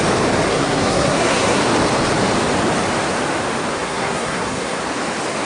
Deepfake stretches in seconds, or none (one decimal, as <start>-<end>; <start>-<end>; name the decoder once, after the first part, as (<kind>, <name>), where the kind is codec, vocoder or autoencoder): 0.5-1.6 (codec, SNAC); 3.7-4.8